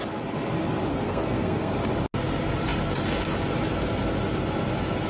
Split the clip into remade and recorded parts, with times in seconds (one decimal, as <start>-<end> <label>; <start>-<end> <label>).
0.0-0.9 recorded; 0.9-1.7 remade; 1.7-5.1 recorded